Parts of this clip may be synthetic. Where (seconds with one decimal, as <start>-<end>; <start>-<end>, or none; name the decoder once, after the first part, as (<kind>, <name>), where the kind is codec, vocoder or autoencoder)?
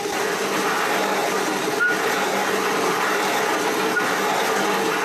none